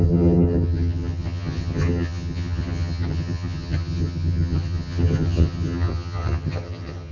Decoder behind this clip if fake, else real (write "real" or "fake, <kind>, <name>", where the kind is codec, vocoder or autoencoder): fake, vocoder, HiFi-GAN